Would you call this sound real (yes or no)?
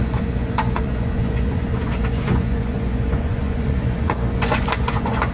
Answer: no